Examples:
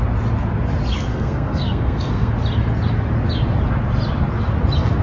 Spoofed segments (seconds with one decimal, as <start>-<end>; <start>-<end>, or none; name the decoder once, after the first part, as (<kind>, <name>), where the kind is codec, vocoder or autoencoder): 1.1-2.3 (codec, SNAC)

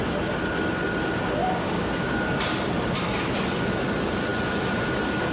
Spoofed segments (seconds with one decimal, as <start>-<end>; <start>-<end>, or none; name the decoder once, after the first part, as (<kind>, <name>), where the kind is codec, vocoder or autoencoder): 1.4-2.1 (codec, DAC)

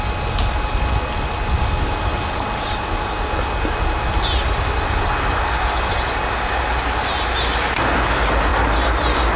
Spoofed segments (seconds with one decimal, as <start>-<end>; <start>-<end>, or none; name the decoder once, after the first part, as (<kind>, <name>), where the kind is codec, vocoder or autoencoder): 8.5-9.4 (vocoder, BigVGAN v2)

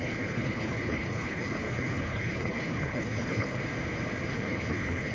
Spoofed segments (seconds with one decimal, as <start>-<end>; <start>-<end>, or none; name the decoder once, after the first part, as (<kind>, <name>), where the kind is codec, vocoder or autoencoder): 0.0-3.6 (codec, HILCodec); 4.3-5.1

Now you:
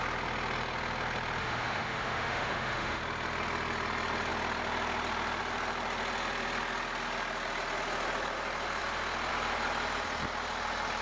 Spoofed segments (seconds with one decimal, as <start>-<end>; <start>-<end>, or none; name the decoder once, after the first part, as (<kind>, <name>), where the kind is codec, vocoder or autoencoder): 1.4-3.0 (autoencoder, DAC-VAE)

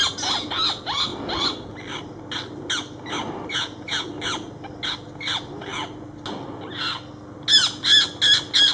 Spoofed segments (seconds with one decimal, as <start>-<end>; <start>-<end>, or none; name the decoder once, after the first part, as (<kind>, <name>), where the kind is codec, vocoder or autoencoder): none

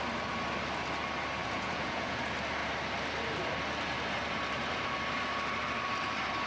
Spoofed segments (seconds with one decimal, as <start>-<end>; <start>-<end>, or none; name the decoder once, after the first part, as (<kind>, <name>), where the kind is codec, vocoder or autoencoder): 1.4-2.2 (vocoder, Vocos)

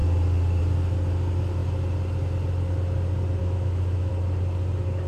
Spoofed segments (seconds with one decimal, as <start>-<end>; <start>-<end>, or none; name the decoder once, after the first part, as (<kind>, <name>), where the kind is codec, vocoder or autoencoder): 3.4-4.1 (autoencoder, DAC-VAE)